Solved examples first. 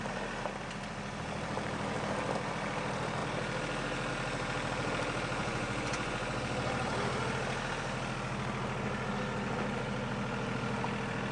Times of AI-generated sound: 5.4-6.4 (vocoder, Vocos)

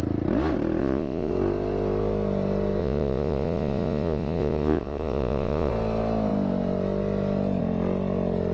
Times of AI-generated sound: 0.8-1.3 (vocoder, Vocos); 2.8-5.7

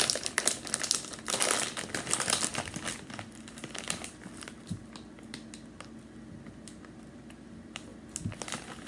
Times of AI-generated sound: none